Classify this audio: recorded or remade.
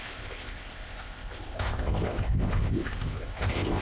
remade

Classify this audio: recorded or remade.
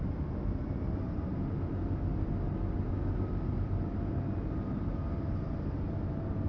recorded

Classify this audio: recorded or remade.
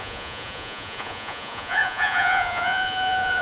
remade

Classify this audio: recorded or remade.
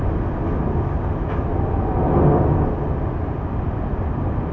recorded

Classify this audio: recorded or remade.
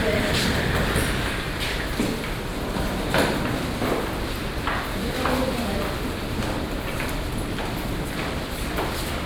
recorded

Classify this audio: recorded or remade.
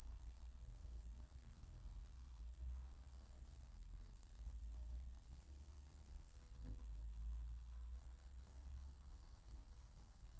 remade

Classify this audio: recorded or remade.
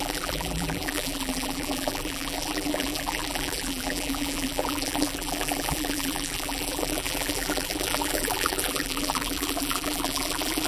remade